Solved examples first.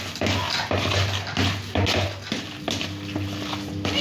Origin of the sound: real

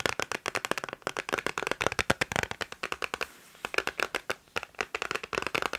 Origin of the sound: real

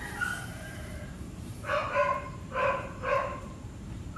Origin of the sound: fake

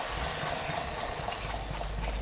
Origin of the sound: real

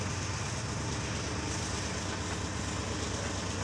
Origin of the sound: real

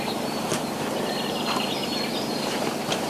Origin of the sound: fake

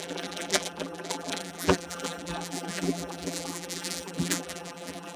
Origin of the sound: fake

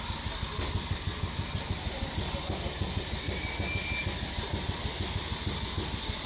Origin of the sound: real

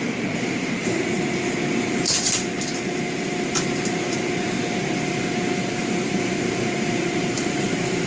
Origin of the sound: fake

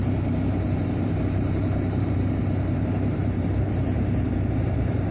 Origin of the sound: fake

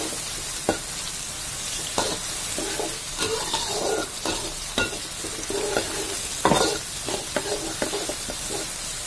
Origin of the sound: real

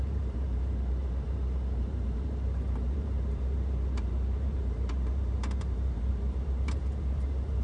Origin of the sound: fake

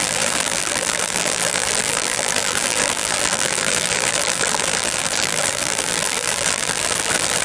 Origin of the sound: fake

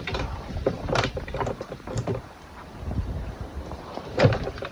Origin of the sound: fake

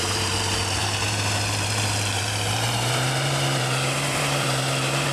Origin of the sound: fake